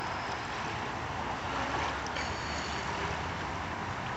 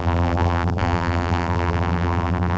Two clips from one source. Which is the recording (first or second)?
first